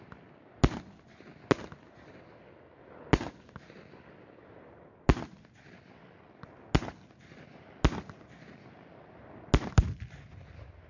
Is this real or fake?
real